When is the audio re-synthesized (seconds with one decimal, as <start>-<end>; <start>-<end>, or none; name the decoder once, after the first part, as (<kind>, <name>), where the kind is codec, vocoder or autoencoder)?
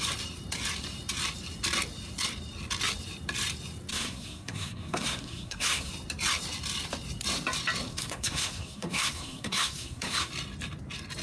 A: 3.9-5.9 (codec, SNAC); 7.9-10.3